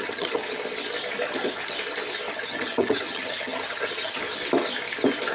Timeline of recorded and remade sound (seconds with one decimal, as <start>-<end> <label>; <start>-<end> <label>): 0.0-0.4 remade; 0.4-2.3 recorded; 2.3-4.2 remade; 4.2-5.3 recorded

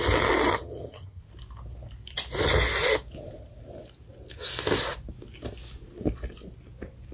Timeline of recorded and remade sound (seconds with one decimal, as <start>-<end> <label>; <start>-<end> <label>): 0.0-0.5 recorded; 0.5-1.2 remade; 1.2-7.1 recorded

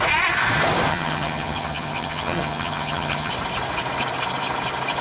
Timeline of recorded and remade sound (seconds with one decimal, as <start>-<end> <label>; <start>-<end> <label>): 0.0-0.9 recorded; 0.9-3.3 remade; 3.3-5.0 recorded